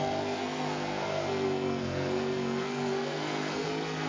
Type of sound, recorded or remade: remade